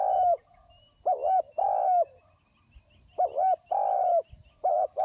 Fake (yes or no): no